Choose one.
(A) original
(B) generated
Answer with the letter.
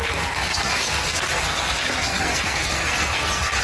B